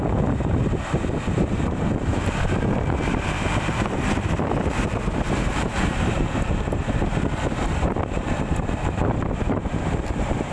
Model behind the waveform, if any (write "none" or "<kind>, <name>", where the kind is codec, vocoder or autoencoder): vocoder, BigVGAN v2